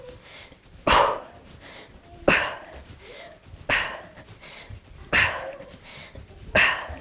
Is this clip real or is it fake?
fake